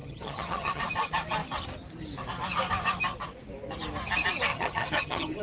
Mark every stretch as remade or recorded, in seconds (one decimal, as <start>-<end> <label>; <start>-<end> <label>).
0.0-0.8 remade; 0.8-4.5 recorded; 4.5-5.4 remade